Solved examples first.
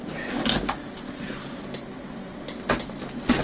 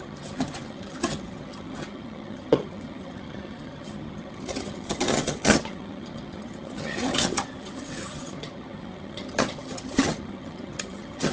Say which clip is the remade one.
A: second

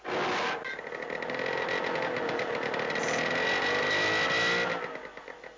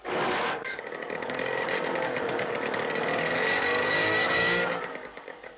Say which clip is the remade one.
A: second